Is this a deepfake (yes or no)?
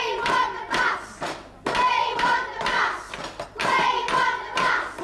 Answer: no